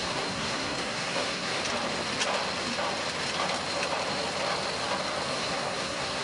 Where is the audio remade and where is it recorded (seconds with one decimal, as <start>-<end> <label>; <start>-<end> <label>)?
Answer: 0.0-1.6 remade; 1.6-5.3 recorded; 5.3-6.2 remade